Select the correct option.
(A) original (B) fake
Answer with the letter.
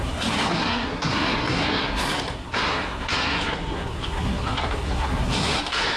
B